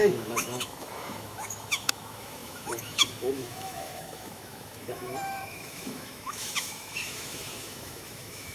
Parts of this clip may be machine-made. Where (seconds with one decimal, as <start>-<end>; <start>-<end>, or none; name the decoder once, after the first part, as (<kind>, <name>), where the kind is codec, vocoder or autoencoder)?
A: 0.0-8.5 (autoencoder, DAC-VAE)